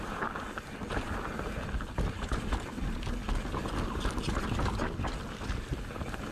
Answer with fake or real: real